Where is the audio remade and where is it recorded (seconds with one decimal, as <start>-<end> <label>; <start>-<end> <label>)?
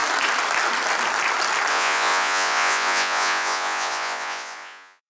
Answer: 0.0-1.7 recorded; 1.7-5.1 remade